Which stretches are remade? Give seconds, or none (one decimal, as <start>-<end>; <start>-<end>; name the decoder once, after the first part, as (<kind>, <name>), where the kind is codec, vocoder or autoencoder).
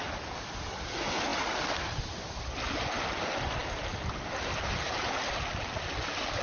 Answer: none